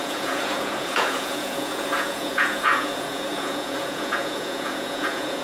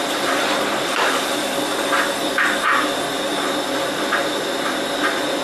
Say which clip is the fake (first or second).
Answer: first